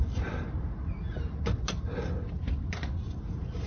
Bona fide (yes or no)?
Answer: yes